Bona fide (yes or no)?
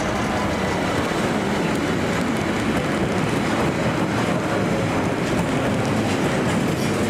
yes